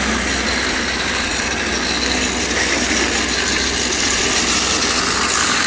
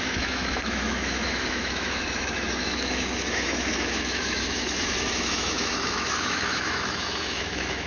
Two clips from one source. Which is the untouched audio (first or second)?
first